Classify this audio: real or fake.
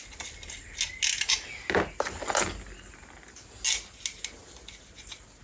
real